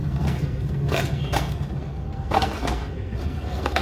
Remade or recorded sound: remade